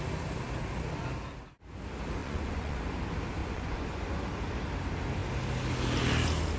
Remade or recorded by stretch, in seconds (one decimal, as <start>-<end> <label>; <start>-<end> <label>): 0.0-2.2 recorded; 2.2-2.8 remade; 2.8-3.4 recorded; 3.4-4.2 remade; 4.2-6.6 recorded